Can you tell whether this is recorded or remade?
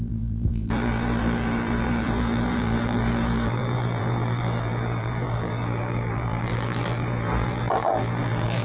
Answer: remade